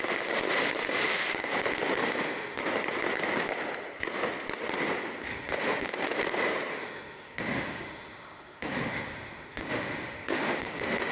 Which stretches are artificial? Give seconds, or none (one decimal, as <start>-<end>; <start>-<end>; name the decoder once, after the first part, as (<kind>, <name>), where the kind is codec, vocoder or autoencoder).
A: 2.0-2.6 (autoencoder, DAC-VAE); 5.3-5.9; 6.7-11.1